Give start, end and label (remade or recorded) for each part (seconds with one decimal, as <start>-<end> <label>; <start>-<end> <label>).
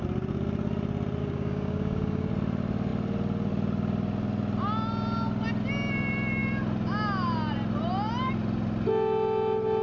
0.0-1.2 recorded; 1.2-2.3 remade; 2.3-9.8 recorded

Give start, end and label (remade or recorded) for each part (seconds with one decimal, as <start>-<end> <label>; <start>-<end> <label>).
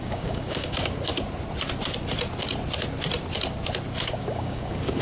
0.0-1.1 remade; 1.1-4.1 recorded; 4.1-5.0 remade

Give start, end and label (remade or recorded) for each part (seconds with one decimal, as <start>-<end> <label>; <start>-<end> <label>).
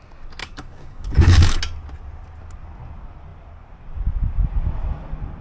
0.0-0.4 recorded; 0.4-1.6 remade; 1.6-5.4 recorded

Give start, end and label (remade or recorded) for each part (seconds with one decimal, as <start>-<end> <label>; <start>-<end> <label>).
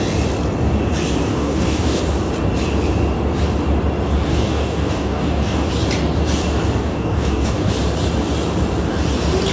0.0-1.3 recorded; 1.3-2.0 remade; 2.0-4.3 recorded; 4.3-5.7 remade; 5.7-6.8 recorded; 6.8-7.7 remade; 7.7-9.5 recorded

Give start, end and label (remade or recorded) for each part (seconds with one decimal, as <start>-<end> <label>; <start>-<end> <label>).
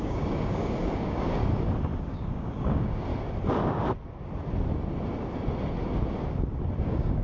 0.0-1.4 remade; 1.4-2.0 recorded; 2.0-3.1 remade; 3.1-6.8 recorded; 6.8-7.2 remade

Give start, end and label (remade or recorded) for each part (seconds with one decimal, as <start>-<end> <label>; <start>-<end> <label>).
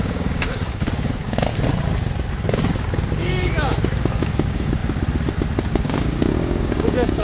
0.0-1.5 remade; 1.5-3.2 recorded; 3.2-4.8 remade; 4.8-5.6 recorded; 5.6-7.2 remade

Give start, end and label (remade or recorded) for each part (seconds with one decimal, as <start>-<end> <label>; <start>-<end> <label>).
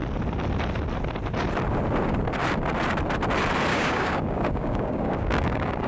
0.0-3.7 recorded; 3.7-5.9 remade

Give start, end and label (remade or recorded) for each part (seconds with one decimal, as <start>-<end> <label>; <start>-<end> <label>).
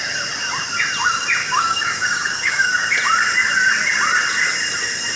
0.0-1.4 recorded; 1.4-2.9 remade; 2.9-5.2 recorded